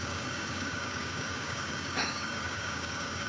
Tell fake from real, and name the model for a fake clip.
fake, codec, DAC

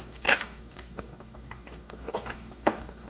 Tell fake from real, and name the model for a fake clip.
fake, codec, DAC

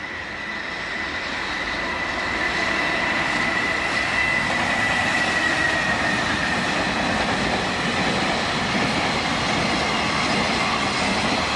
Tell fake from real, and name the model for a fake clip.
real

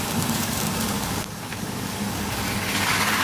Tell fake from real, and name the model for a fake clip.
fake, codec, DAC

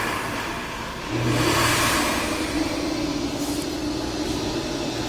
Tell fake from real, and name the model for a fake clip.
real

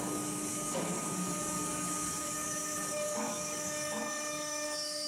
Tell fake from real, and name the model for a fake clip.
fake, codec, DAC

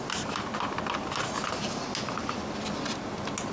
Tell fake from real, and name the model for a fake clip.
real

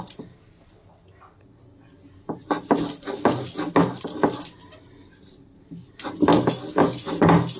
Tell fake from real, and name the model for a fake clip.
real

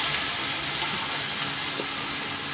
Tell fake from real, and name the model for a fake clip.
real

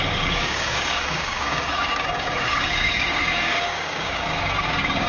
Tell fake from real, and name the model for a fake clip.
fake, codec, DAC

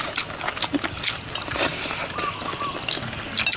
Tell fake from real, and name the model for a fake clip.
real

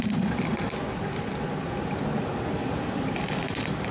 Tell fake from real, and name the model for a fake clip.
real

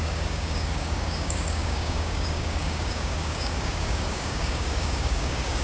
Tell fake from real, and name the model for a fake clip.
fake, codec, DAC